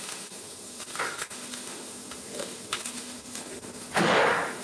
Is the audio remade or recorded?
remade